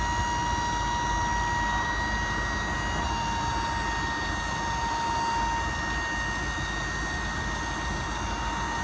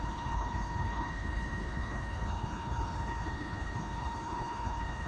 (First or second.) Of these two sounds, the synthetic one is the second